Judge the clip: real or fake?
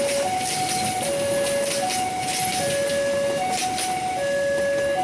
real